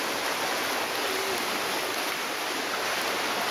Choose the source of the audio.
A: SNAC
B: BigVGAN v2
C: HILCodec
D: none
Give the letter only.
D